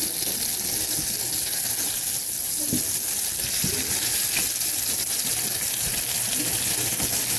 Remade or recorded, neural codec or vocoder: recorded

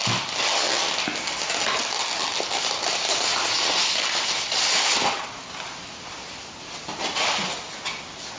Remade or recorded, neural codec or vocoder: recorded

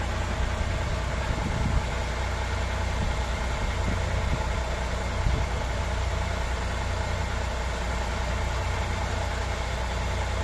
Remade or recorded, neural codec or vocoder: recorded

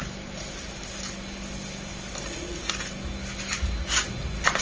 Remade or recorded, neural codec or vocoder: recorded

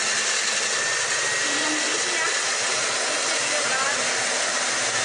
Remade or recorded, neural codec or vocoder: recorded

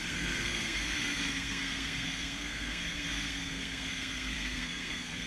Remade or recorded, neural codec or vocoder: remade, codec, SNAC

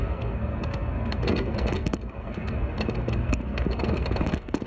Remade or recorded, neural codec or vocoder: remade, codec, SNAC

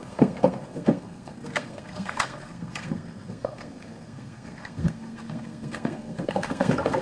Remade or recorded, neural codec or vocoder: remade, codec, SNAC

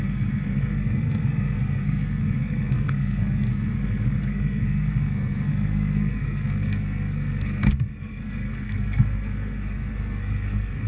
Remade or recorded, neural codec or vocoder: remade, codec, SNAC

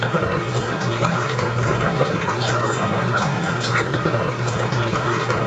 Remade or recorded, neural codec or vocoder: remade, codec, SNAC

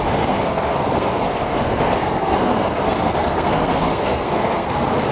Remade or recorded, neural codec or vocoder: remade, codec, SNAC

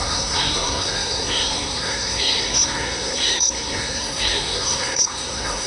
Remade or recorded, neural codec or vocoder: remade, codec, SNAC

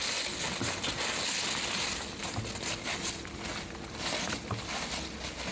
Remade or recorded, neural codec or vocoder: recorded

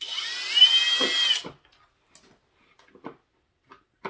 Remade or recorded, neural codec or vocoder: recorded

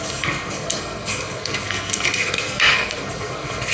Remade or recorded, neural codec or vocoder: remade, codec, SNAC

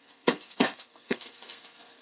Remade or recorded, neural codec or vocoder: remade, codec, SNAC